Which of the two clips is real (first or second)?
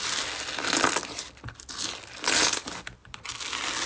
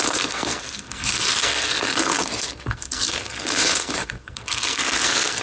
first